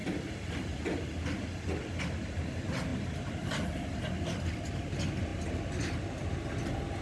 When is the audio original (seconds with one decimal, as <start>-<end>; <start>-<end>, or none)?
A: 0.0-7.0